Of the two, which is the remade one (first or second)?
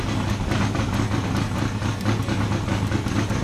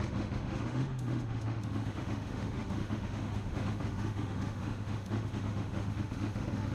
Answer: second